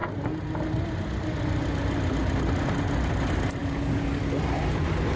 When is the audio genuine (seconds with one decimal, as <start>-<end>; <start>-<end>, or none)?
0.0-3.6; 4.2-5.2